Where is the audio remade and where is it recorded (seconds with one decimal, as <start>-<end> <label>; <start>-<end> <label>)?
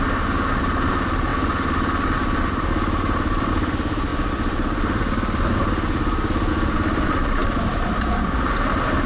0.0-4.1 recorded; 4.1-6.5 remade; 6.5-9.1 recorded